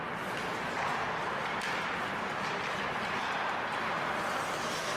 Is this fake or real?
real